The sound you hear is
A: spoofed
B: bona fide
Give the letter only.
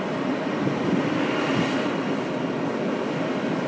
B